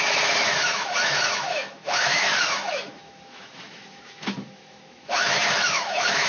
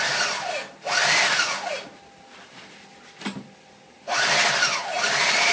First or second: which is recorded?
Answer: second